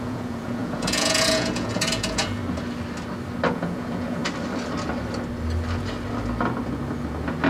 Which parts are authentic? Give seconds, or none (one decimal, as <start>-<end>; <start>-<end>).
2.4-3.5; 4.2-7.5